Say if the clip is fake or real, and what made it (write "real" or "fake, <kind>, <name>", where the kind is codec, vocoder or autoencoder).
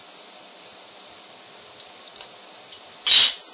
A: real